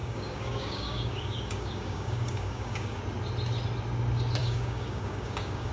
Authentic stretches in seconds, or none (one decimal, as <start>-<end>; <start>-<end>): 3.0-4.4